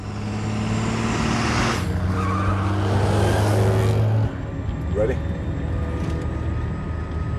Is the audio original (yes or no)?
yes